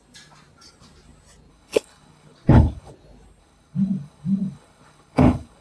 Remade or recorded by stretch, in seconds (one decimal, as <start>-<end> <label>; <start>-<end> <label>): 0.0-1.5 recorded; 1.5-2.9 remade; 2.9-3.4 recorded; 3.4-5.6 remade